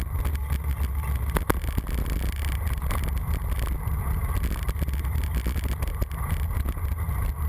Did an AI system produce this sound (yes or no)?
no